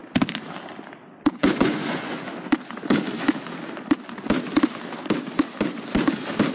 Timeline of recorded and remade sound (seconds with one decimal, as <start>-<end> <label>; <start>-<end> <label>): 0.0-1.4 recorded; 1.4-2.2 remade; 2.2-6.5 recorded